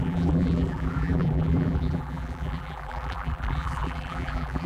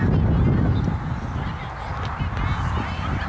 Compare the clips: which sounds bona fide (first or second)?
second